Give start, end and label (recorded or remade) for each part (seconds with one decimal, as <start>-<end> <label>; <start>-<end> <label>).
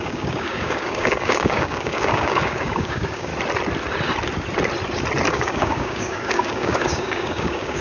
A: 0.0-3.3 remade; 3.3-5.3 recorded; 5.3-7.8 remade